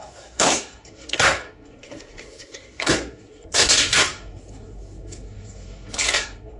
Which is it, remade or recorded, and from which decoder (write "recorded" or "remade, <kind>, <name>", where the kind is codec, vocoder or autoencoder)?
remade, codec, SNAC